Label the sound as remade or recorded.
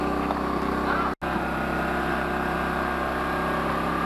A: recorded